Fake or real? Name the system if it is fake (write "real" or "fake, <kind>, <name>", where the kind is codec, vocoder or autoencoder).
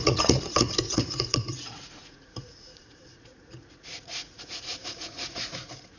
fake, vocoder, Vocos